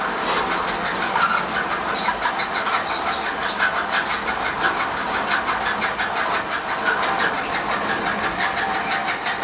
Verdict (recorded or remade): recorded